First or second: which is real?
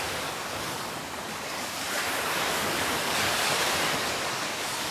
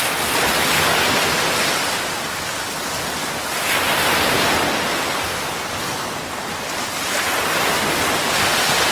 second